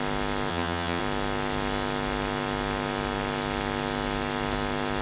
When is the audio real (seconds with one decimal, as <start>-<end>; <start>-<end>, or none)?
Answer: 0.0-0.5; 1.0-5.0

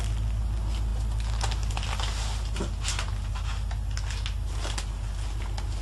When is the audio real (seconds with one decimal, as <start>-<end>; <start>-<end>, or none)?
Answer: 0.0-5.8

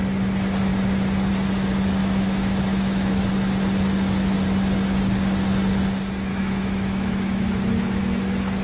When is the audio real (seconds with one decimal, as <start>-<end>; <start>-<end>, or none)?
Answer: 0.0-2.0; 3.2-6.3; 8.0-8.6

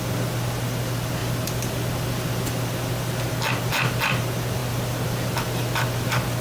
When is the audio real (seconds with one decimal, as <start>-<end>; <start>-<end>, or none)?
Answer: 0.0-1.2; 3.3-4.6

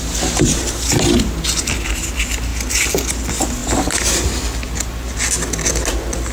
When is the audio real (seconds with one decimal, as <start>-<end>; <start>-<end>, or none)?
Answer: 0.0-6.3